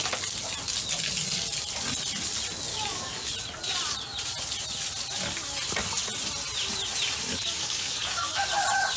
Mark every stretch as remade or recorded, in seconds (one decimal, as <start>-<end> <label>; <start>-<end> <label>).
0.0-2.7 recorded; 2.7-3.3 remade; 3.3-7.3 recorded; 7.3-8.5 remade; 8.5-9.0 recorded